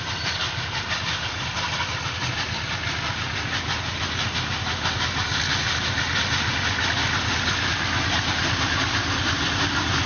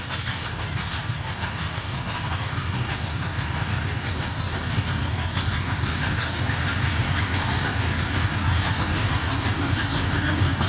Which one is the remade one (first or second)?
second